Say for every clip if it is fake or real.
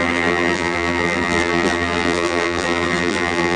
fake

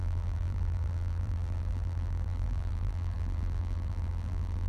fake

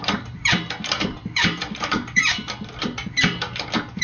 fake